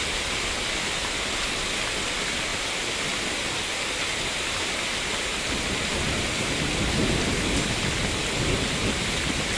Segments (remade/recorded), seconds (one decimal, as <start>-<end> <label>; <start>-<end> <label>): 0.0-5.3 recorded; 5.3-7.2 remade; 7.2-9.6 recorded